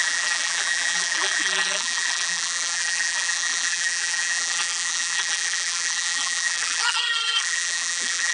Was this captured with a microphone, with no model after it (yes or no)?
no